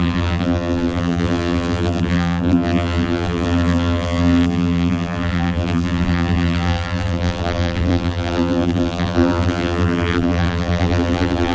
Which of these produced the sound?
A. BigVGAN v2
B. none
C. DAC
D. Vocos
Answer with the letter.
A